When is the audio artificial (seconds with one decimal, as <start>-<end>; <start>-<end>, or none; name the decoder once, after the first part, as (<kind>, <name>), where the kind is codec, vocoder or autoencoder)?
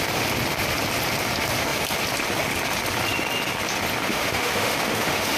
4.1-5.4 (autoencoder, DAC-VAE)